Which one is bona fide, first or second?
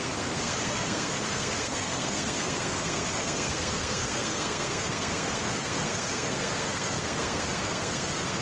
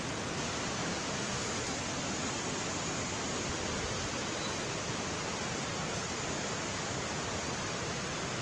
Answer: second